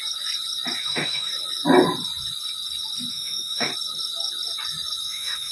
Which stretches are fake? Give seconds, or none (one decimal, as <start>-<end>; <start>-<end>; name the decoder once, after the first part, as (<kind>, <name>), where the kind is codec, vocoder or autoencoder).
0.8-1.3 (autoencoder, DAC-VAE); 3.1-3.7; 5.0-5.5